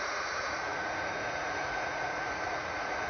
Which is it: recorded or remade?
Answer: remade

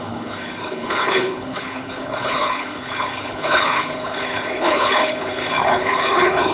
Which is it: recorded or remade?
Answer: remade